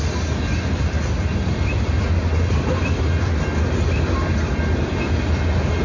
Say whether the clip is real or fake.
real